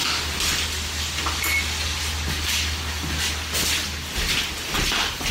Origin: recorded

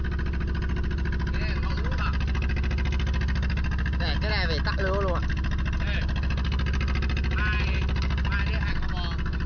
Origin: recorded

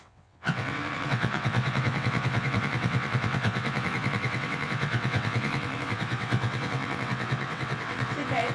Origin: remade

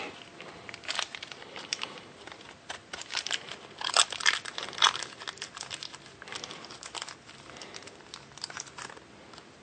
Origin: recorded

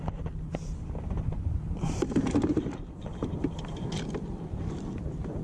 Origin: remade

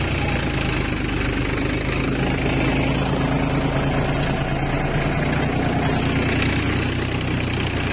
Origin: recorded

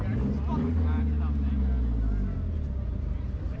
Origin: recorded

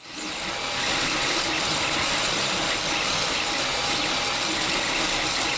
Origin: recorded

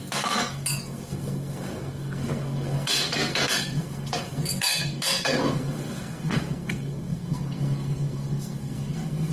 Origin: remade